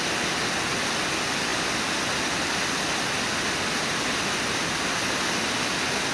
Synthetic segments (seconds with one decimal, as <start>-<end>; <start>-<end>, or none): none